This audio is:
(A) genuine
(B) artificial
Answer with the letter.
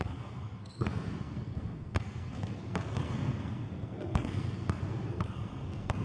B